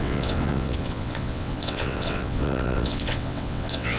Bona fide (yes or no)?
no